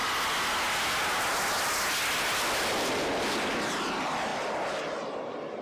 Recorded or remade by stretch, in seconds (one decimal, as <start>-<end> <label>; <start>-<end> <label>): 0.0-5.6 recorded